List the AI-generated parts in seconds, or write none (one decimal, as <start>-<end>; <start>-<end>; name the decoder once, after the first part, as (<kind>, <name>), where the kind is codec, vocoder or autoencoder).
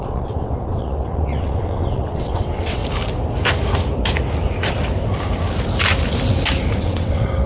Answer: 0.0-2.8 (vocoder, WaveNeXt); 6.8-7.5